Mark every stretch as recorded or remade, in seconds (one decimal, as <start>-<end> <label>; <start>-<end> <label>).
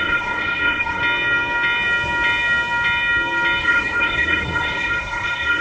0.0-1.0 remade; 1.0-3.6 recorded; 3.6-5.6 remade